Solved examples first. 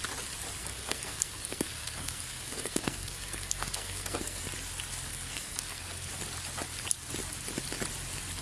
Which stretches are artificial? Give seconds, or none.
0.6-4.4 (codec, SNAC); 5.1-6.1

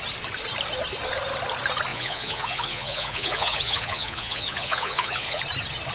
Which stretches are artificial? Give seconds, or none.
1.9-5.4 (vocoder, Vocos)

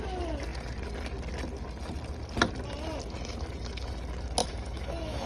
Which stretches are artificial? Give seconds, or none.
4.4-5.3 (autoencoder, DAC-VAE)

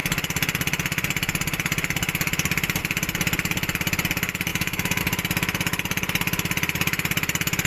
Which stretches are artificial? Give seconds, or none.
4.5-5.0 (autoencoder, DAC-VAE)